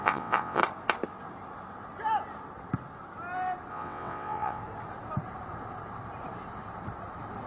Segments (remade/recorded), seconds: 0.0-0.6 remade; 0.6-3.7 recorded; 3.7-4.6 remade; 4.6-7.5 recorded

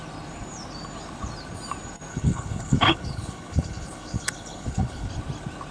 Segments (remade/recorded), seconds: 0.0-2.1 recorded; 2.1-5.1 remade; 5.1-5.7 recorded